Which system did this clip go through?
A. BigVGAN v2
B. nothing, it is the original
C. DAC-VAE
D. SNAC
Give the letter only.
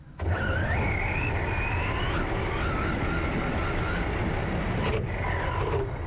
B